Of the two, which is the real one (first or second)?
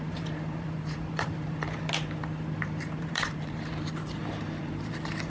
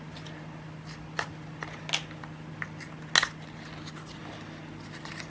second